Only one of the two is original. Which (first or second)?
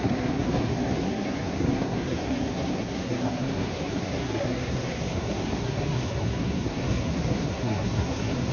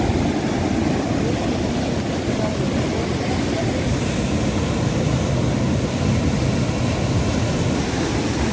second